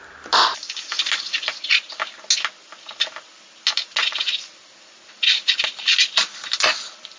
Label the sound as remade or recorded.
recorded